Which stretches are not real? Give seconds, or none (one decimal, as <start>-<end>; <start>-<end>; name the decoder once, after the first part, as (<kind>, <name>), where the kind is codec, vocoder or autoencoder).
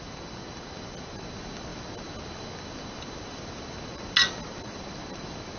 none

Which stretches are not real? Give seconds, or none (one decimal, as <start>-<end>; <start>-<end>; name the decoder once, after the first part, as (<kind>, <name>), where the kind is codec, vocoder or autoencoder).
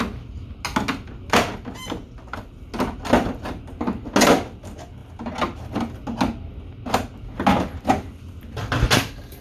none